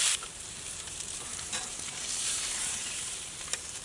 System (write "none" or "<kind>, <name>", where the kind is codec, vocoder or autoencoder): vocoder, BigVGAN v2